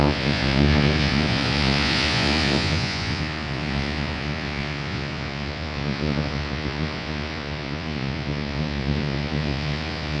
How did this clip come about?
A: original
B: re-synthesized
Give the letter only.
B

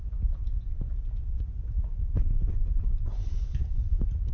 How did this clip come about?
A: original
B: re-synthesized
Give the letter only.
A